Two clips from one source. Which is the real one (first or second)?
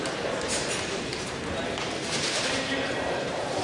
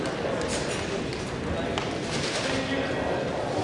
second